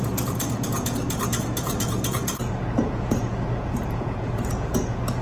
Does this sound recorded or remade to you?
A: remade